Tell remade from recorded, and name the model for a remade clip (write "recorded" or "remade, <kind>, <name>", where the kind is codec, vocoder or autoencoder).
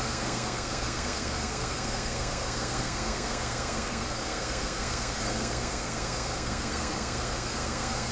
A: remade, codec, SNAC